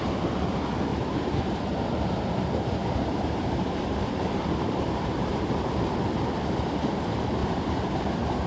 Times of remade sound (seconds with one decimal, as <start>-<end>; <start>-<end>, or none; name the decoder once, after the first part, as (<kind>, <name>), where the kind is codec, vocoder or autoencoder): 0.9-1.8 (vocoder, BigVGAN v2); 2.8-5.3; 7.4-8.5